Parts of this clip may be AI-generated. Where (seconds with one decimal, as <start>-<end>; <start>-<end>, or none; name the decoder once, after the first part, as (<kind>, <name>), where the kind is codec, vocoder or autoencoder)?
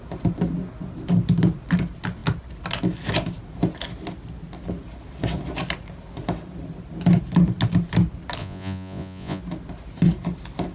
8.4-9.4 (vocoder, Vocos)